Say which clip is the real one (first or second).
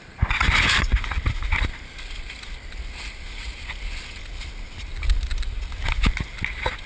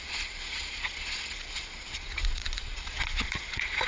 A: first